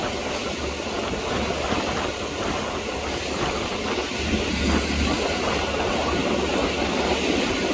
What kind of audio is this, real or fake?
real